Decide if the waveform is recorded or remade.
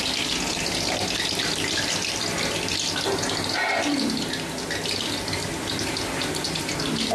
recorded